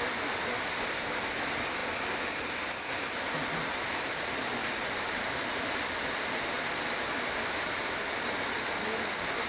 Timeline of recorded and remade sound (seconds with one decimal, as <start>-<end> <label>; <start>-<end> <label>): 0.0-9.5 recorded